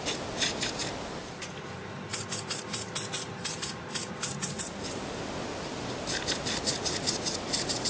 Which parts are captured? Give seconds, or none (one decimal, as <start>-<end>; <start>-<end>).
0.0-7.9